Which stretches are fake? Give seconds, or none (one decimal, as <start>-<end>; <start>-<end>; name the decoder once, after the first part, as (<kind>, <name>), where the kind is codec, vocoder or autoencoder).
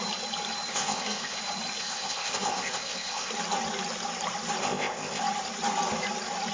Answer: 0.7-1.4 (codec, ZipCodec); 1.8-3.3; 4.6-5.2